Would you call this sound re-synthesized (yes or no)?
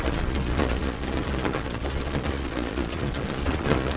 yes